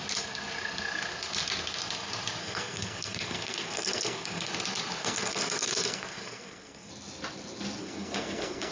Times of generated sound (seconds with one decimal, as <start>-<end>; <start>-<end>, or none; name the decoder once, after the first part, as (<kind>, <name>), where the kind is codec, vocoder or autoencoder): 2.4-4.5 (codec, SNAC); 5.0-6.9; 7.8-8.7